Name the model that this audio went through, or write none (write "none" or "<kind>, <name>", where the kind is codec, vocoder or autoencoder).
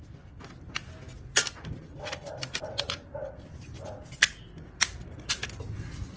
none